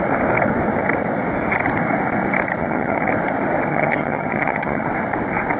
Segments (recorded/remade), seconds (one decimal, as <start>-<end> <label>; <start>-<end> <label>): 0.0-2.6 recorded; 2.6-3.1 remade; 3.1-3.7 recorded; 3.7-4.9 remade; 4.9-5.6 recorded